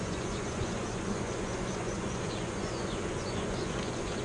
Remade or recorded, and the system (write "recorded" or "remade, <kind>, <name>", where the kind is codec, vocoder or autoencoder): remade, vocoder, Vocos